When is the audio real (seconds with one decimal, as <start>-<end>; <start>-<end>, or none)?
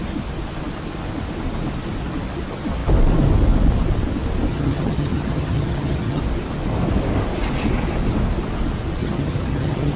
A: 0.0-4.5; 6.2-9.0